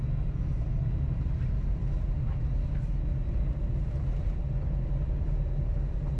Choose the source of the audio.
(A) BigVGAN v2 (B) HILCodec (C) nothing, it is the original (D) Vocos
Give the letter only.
C